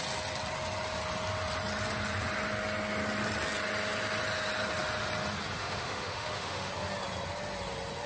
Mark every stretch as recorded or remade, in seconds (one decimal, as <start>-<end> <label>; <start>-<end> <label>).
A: 0.0-5.6 recorded; 5.6-6.7 remade; 6.7-8.1 recorded